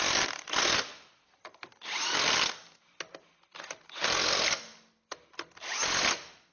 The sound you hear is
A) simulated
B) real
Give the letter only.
B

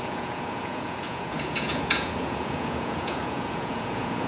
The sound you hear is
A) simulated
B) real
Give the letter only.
A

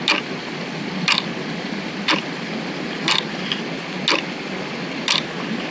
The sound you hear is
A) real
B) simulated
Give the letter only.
A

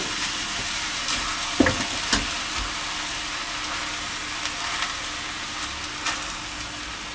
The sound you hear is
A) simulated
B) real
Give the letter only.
B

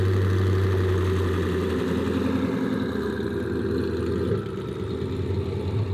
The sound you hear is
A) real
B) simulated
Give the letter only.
A